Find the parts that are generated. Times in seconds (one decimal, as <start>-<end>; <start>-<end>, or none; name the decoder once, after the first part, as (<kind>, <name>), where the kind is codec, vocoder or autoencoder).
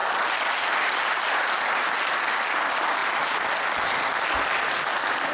none